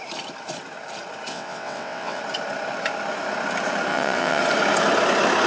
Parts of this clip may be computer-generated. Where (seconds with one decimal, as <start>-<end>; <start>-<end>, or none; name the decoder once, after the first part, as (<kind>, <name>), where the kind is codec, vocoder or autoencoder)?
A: 1.3-2.2 (vocoder, WaveNeXt); 3.9-4.4